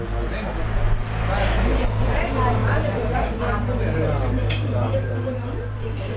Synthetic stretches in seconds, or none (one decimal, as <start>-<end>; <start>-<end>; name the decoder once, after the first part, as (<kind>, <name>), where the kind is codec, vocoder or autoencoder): none